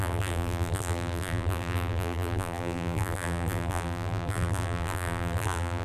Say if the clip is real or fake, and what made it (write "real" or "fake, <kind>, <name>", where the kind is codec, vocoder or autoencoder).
fake, vocoder, BigVGAN v2